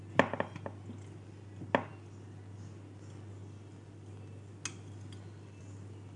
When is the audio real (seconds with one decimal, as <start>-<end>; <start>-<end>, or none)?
0.0-6.2